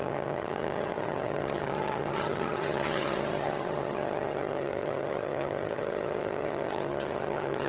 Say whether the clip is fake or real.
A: fake